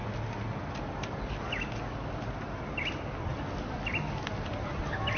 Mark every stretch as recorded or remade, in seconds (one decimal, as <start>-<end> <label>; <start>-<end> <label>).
0.0-5.2 recorded

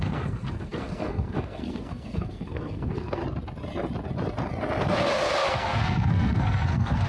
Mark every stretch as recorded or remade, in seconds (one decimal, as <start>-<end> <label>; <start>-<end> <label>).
0.0-3.2 remade; 3.2-5.5 recorded; 5.5-7.1 remade